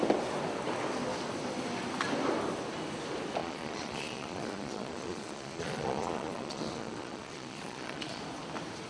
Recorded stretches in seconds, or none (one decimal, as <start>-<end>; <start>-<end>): 0.0-3.4; 8.2-8.9